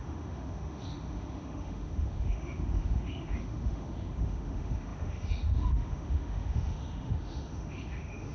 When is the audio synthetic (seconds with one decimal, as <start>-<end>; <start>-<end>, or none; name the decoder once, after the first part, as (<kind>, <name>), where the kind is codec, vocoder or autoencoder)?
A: 0.0-8.3 (autoencoder, DAC-VAE)